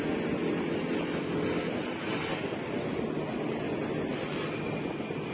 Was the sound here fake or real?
real